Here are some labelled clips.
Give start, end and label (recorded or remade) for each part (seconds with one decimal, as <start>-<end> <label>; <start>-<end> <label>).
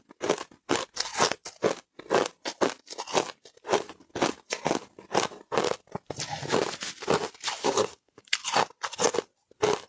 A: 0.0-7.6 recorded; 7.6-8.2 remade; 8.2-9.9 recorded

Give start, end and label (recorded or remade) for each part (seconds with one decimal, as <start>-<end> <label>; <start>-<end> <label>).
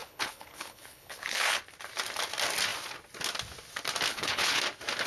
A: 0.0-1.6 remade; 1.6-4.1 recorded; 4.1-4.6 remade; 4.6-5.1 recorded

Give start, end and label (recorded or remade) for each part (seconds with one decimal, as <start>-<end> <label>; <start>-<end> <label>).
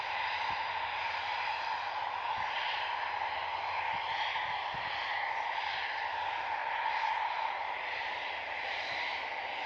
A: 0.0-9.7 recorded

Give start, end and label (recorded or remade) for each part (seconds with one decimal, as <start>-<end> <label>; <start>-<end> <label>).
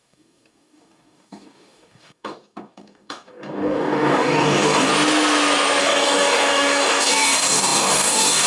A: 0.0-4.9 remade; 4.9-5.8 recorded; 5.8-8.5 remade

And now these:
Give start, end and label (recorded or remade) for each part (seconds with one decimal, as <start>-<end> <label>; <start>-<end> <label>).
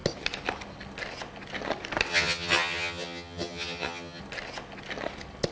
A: 0.0-2.1 recorded; 2.1-4.2 remade; 4.2-5.5 recorded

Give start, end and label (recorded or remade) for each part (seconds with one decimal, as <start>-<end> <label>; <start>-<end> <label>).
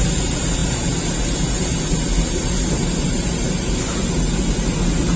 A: 0.0-5.2 recorded